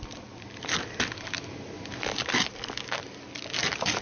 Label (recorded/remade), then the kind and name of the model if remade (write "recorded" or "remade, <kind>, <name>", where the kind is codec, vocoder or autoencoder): recorded